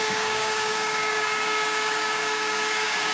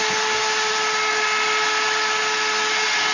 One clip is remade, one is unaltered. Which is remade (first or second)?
first